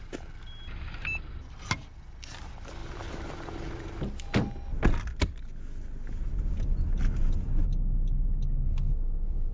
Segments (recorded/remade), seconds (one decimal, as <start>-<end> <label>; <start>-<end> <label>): 0.0-2.8 recorded; 2.8-3.9 remade; 3.9-9.5 recorded